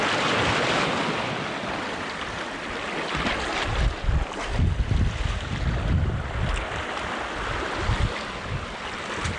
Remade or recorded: recorded